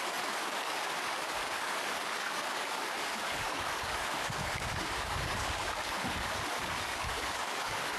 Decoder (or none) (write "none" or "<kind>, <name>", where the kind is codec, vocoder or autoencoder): codec, DAC